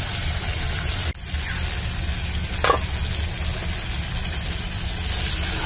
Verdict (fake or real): real